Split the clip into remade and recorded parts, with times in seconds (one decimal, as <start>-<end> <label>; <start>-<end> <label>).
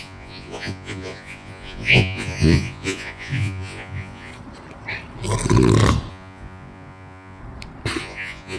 0.0-4.3 remade; 4.3-6.1 recorded; 6.1-7.4 remade; 7.4-8.0 recorded; 8.0-8.6 remade